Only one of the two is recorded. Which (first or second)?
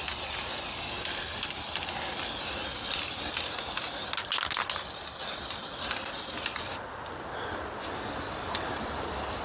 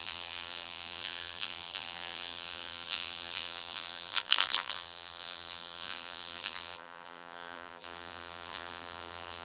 first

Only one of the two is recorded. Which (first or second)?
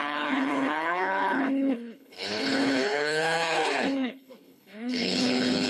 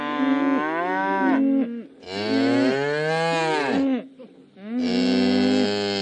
second